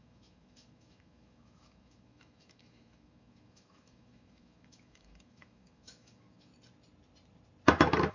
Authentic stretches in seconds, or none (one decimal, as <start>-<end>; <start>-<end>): 6.5-8.1